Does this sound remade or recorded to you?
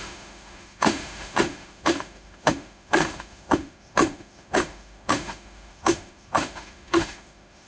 remade